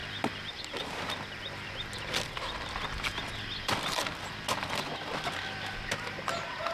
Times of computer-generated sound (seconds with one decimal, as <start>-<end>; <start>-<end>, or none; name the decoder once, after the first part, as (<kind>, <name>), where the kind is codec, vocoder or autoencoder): 0.0-0.6 (vocoder, BigVGAN v2); 3.1-4.0